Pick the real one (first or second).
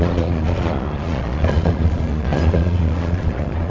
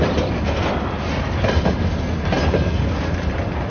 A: second